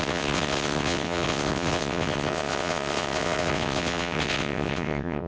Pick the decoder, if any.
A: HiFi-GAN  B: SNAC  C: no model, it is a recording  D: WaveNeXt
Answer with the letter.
D